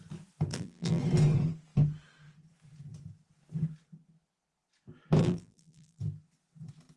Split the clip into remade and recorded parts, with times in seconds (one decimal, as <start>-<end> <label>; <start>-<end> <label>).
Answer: 0.0-0.5 recorded; 0.5-1.0 remade; 1.0-5.2 recorded; 5.2-6.0 remade; 6.0-7.0 recorded